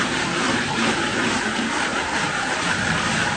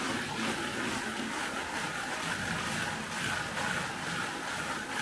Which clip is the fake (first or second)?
first